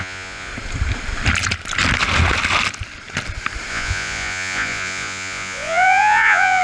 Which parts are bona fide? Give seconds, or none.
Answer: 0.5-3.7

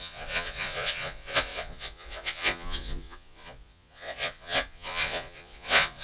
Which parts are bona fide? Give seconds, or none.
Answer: none

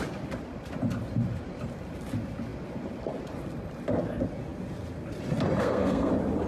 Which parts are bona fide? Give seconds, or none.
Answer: 0.0-5.6; 6.1-6.5

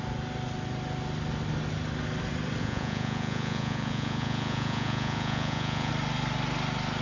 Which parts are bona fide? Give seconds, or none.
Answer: 0.0-2.6; 5.9-7.0

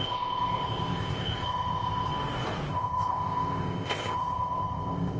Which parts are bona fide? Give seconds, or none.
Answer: 2.1-2.7

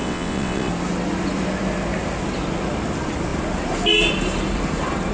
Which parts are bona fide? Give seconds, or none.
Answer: 0.7-5.1

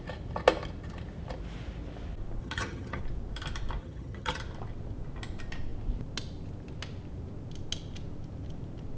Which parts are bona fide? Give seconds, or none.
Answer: 0.0-2.4; 3.0-3.8; 4.4-9.0